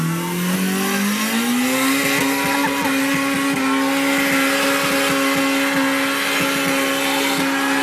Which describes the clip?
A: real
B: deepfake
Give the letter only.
A